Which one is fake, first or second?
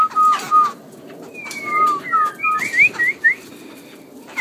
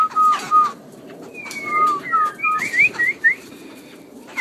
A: second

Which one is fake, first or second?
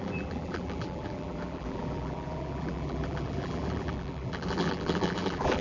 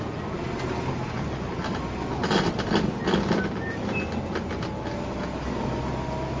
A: first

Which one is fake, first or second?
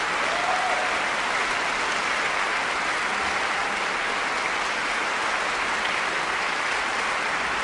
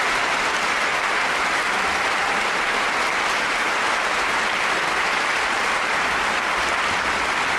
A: second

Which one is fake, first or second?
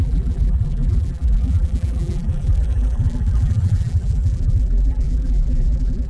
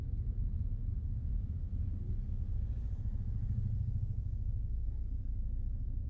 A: first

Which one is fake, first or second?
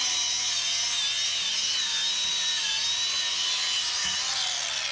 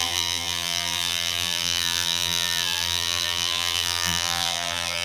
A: second